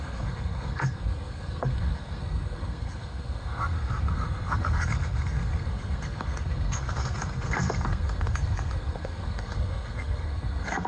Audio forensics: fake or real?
fake